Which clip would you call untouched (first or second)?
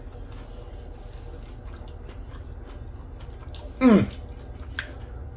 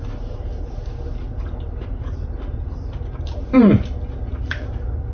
first